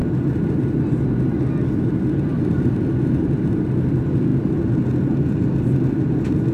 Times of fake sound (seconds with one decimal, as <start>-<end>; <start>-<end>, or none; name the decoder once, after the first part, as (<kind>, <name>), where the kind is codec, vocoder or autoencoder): 2.3-2.9 (vocoder, BigVGAN v2)